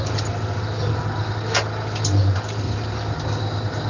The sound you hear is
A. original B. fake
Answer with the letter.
A